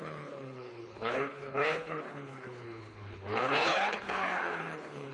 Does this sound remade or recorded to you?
remade